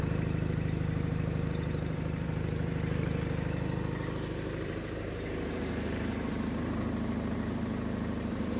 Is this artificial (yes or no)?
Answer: yes